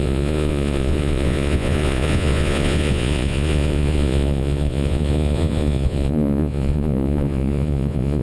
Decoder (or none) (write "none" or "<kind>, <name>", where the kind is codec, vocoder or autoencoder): vocoder, Vocos